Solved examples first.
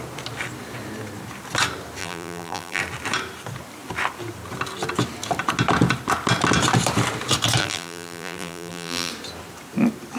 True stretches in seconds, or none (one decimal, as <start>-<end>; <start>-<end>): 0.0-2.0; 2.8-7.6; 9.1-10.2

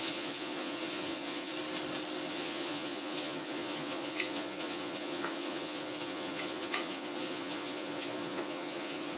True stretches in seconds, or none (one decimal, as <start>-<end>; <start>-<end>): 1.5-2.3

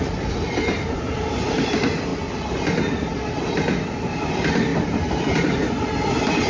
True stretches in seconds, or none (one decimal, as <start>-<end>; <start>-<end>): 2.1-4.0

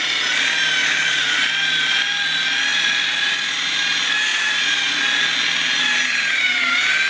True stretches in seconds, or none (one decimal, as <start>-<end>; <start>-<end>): 0.0-0.8; 1.4-2.7; 3.8-4.3; 5.0-7.1

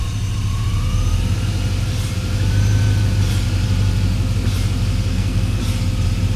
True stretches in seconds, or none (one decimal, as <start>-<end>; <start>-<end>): 0.0-5.1; 5.6-6.4

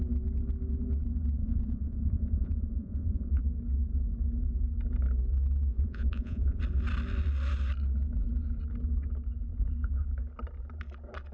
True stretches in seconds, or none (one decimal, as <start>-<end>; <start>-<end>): 0.0-1.4; 3.4-5.7; 6.6-11.3

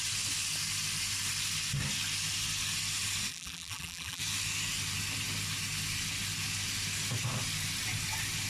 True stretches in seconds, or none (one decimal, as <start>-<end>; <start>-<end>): 0.0-3.3; 4.2-8.5

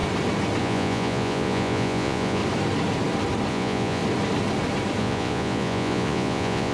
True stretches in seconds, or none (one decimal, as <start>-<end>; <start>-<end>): 0.0-0.6; 2.4-3.5; 4.0-5.0